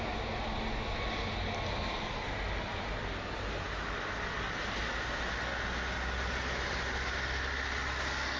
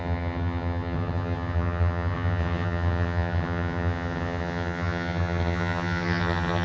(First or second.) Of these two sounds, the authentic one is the first